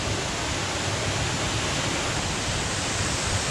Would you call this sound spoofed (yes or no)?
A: no